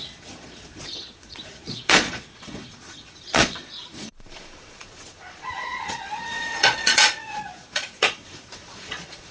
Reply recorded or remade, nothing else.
remade